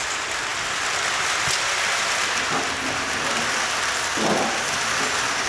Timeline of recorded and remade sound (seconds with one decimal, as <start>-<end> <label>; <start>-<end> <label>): 0.0-5.5 recorded